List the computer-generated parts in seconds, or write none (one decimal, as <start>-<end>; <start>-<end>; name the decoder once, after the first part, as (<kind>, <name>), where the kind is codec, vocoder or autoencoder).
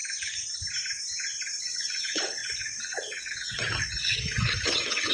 1.6-5.1 (vocoder, WaveNeXt)